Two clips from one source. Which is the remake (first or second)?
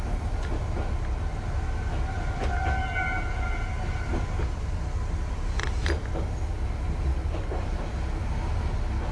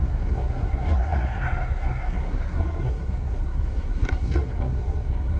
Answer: second